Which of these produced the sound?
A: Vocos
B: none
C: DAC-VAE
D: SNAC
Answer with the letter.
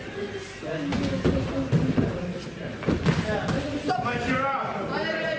B